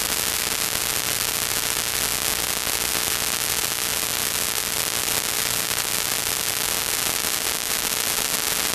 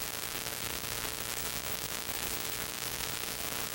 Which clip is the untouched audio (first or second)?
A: first